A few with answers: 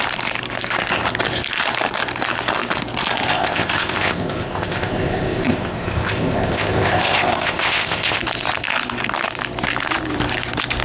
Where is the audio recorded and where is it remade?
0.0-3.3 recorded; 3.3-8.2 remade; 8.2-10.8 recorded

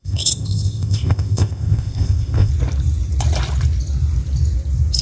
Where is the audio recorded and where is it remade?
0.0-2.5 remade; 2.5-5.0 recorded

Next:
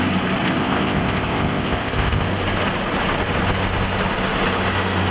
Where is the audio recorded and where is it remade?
0.0-0.6 recorded; 0.6-2.3 remade; 2.3-5.1 recorded

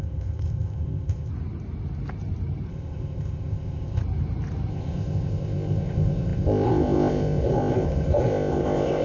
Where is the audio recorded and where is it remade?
0.0-1.3 remade; 1.3-2.7 recorded; 2.7-4.0 remade; 4.0-4.7 recorded; 4.7-9.0 remade